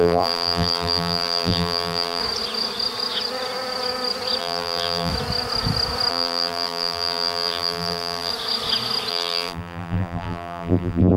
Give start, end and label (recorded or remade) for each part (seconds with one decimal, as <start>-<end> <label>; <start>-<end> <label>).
0.0-2.2 remade; 2.2-4.4 recorded; 4.4-5.1 remade; 5.1-6.1 recorded; 6.1-8.3 remade; 8.3-9.1 recorded; 9.1-11.2 remade